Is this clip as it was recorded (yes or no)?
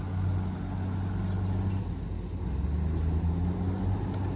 yes